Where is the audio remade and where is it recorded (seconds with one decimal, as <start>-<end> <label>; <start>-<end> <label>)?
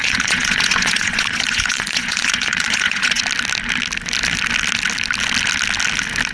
0.0-3.2 remade; 3.2-6.3 recorded